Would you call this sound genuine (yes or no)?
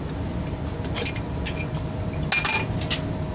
yes